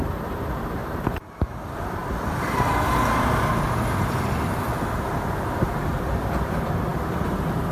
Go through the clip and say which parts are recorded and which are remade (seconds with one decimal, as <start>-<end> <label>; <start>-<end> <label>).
0.0-0.8 recorded; 0.8-1.4 remade; 1.4-7.7 recorded